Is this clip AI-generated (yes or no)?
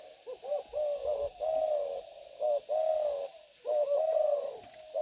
no